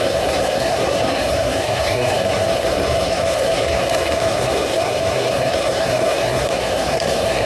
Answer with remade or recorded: remade